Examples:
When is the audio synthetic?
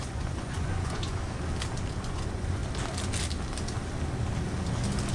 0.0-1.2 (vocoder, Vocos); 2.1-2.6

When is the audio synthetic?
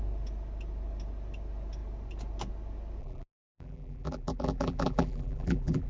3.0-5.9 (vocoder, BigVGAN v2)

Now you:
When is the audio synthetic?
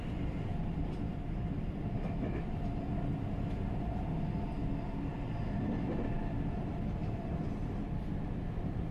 0.0-5.1 (vocoder, BigVGAN v2); 6.3-8.9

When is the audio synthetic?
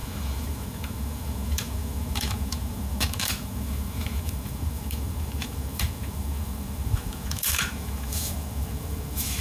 0.0-9.4 (autoencoder, DAC-VAE)